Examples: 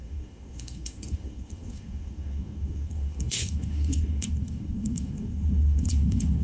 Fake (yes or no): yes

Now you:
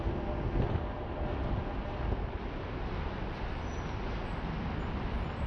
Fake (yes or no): no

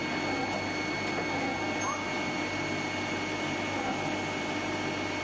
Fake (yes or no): no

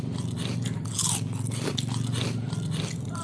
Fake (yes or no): no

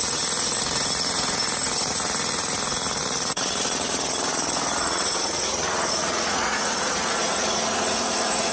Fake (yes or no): yes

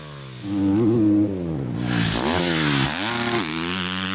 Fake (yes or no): no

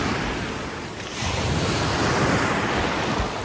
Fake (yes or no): no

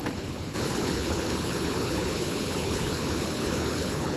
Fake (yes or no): yes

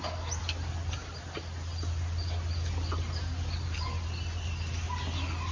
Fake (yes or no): no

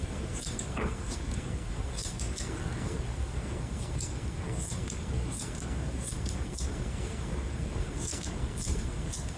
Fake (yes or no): yes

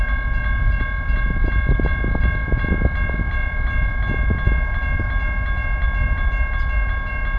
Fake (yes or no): no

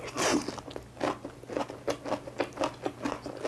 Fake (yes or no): no